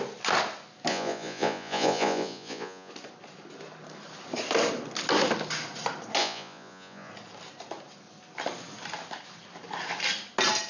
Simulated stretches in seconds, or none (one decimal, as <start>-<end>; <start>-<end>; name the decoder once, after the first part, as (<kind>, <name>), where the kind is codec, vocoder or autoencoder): 0.9-2.9 (vocoder, Vocos); 6.2-7.1